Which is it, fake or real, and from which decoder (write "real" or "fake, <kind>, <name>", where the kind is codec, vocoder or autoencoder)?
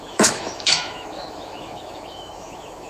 fake, autoencoder, DAC-VAE